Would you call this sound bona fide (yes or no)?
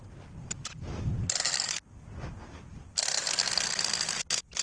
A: yes